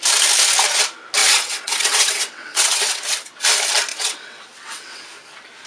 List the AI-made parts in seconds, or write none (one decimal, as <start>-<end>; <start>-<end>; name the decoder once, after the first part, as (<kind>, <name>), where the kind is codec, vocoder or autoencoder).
1.2-3.3 (vocoder, WaveNeXt); 3.9-5.1

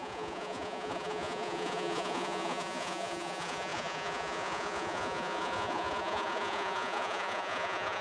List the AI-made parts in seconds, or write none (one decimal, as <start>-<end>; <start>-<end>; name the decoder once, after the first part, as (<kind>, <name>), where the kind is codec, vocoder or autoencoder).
0.0-8.0 (vocoder, Vocos)